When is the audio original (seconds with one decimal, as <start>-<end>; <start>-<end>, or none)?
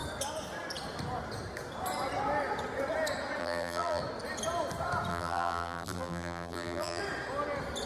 0.0-3.4; 4.0-5.1; 7.0-7.9